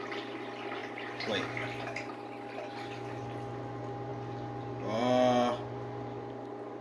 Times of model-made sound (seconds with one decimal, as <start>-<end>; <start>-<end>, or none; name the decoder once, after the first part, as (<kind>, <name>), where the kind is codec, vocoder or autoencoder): none